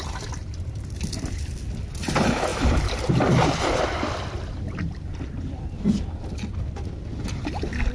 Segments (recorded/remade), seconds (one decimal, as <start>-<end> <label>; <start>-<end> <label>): 0.0-7.9 recorded